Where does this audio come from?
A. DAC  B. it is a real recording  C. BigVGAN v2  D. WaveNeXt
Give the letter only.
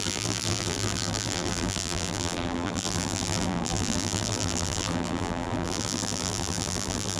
C